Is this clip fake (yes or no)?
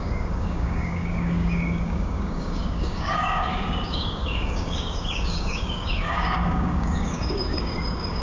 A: yes